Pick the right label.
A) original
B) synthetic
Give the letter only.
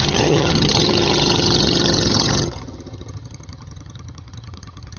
B